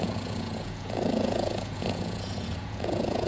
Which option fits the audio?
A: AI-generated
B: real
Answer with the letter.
A